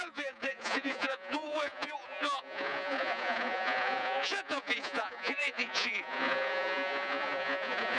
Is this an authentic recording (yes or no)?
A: no